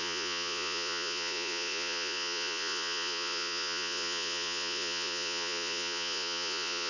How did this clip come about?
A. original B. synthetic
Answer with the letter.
B